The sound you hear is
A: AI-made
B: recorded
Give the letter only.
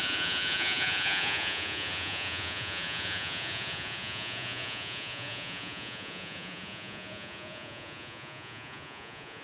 A